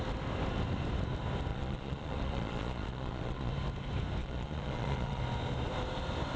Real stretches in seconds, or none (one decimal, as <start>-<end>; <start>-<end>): 0.0-1.5; 3.5-4.2; 5.2-6.4